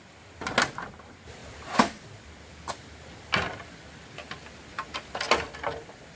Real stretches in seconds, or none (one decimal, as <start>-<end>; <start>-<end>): 0.0-6.2